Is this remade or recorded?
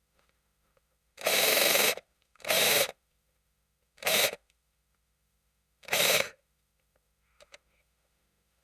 remade